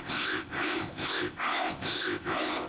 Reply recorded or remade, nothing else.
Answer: remade